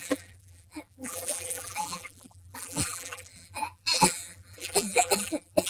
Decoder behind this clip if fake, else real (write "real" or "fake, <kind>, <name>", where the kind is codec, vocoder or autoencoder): fake, vocoder, BigVGAN v2